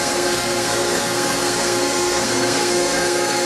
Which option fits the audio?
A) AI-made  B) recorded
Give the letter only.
A